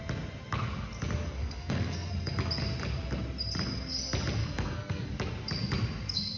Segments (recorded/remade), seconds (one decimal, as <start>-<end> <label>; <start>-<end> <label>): 0.0-1.4 recorded; 1.4-2.1 remade; 2.1-4.4 recorded; 4.4-5.1 remade; 5.1-6.4 recorded